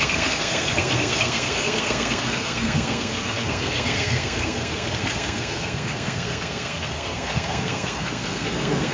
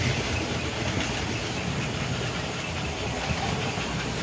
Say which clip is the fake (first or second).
first